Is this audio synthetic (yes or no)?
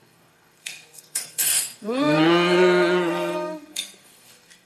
yes